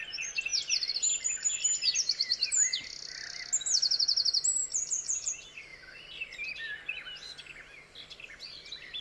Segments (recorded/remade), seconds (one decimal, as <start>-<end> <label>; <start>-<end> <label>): 0.0-4.6 recorded; 4.6-5.3 remade; 5.3-9.0 recorded